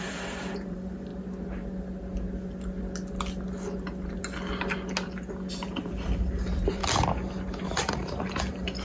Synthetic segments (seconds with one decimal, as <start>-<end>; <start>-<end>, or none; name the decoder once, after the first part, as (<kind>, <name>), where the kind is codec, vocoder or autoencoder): 0.0-1.1 (vocoder, BigVGAN v2); 5.5-6.8; 7.9-8.8